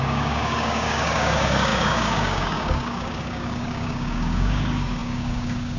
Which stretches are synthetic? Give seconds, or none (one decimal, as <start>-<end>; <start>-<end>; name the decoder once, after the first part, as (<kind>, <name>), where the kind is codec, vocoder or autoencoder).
0.0-5.8 (codec, DAC)